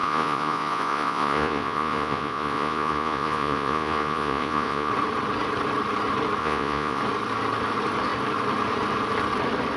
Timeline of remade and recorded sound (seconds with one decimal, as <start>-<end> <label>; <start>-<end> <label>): 0.0-4.9 remade; 4.9-6.4 recorded; 6.4-7.0 remade; 7.0-9.8 recorded